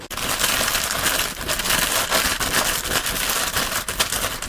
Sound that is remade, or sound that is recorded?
recorded